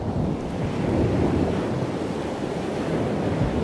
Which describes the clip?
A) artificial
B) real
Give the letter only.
B